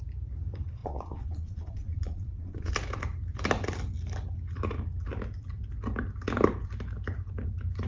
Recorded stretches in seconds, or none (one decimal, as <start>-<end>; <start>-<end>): 0.0-0.8; 2.7-7.9